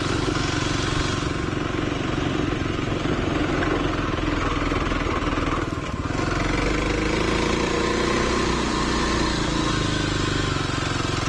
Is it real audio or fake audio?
real